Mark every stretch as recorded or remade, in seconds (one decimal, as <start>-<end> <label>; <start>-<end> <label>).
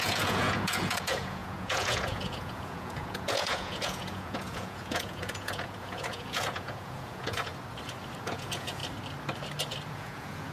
0.0-7.5 remade; 7.5-8.2 recorded; 8.2-8.8 remade; 8.8-9.9 recorded; 9.9-10.5 remade